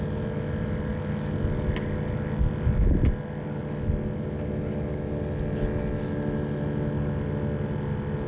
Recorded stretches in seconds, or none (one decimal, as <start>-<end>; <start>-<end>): 0.0-8.3